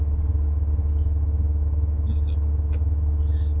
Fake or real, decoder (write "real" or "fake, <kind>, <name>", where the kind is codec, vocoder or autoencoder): real